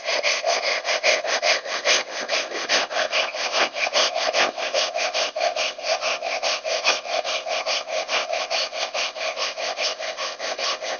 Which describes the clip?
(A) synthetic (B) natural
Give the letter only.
A